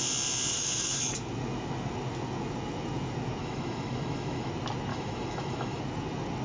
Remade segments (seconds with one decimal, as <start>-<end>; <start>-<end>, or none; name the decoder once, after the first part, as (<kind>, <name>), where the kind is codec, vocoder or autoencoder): 0.5-1.1 (autoencoder, DAC-VAE); 3.4-4.5; 4.9-5.8